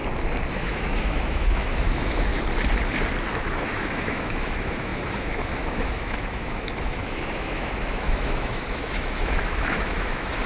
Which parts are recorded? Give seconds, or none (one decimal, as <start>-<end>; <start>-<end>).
0.0-0.5; 2.3-3.3